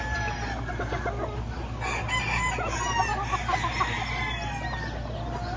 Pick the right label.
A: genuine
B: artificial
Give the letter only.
A